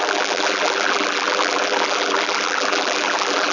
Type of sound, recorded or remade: remade